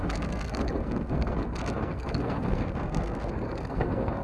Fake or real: fake